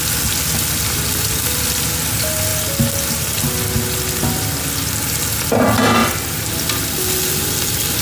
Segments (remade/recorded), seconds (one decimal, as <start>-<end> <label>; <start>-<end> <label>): 0.0-8.0 recorded